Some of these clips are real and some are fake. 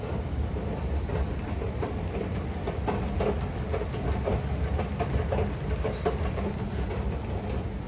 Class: real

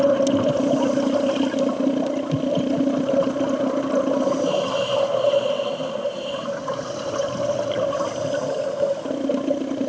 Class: real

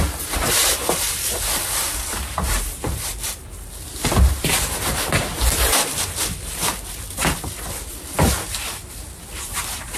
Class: fake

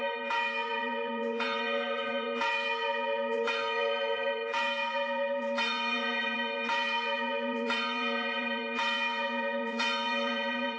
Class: fake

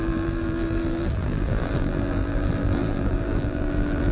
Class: fake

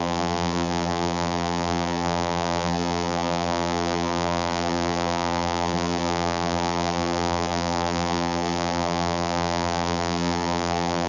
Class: fake